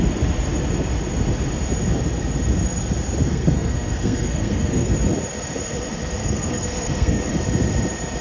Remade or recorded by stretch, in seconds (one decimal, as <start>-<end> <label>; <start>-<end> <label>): 0.0-3.3 recorded; 3.3-4.9 remade; 4.9-6.2 recorded; 6.2-7.2 remade; 7.2-8.2 recorded